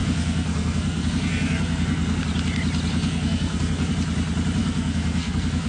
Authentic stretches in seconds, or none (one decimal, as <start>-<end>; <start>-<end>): 2.2-2.9; 3.9-4.6